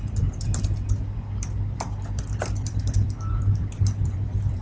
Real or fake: fake